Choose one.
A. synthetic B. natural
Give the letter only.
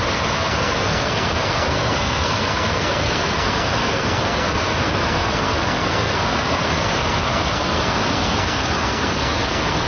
A